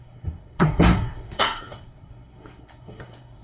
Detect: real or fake fake